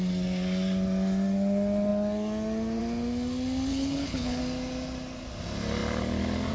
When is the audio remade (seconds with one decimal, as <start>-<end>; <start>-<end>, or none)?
3.7-4.4